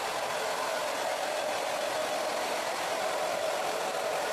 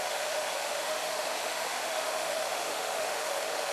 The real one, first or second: first